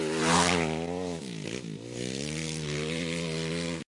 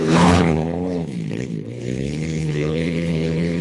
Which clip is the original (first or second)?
first